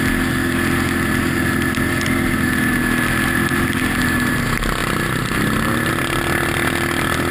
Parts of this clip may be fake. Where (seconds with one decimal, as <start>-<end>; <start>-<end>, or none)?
none